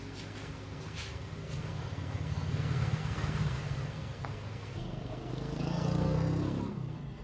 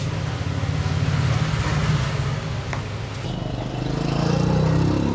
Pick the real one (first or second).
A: second